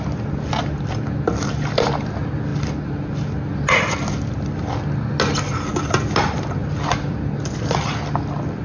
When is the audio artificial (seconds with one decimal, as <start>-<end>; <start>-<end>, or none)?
none